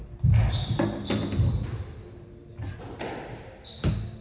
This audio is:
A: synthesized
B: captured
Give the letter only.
B